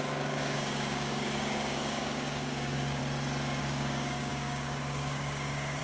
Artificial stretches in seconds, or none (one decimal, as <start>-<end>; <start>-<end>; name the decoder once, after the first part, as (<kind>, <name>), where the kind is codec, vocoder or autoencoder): 0.0-3.0 (codec, DAC); 3.6-5.8